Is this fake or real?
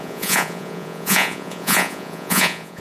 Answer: fake